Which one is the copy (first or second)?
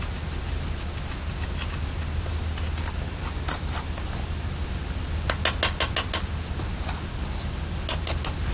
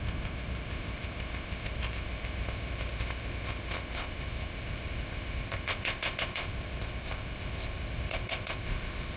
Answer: second